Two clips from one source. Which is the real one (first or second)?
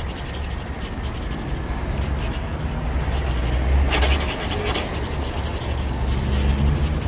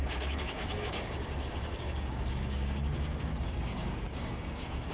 first